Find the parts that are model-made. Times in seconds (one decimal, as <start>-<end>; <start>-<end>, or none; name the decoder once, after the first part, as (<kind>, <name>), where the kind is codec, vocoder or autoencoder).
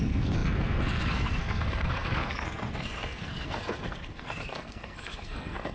0.0-5.7 (codec, SNAC)